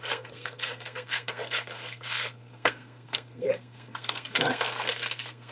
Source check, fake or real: fake